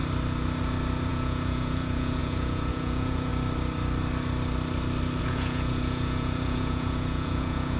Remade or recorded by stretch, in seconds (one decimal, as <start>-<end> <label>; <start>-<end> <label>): 0.0-1.1 recorded; 1.1-3.3 remade; 3.3-5.2 recorded; 5.2-7.8 remade